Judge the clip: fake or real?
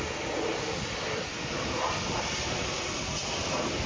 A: real